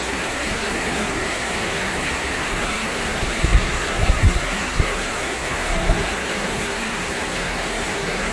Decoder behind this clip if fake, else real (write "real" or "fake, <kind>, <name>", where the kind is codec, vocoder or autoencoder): fake, codec, SNAC